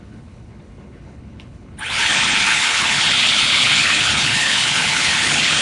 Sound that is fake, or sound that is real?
fake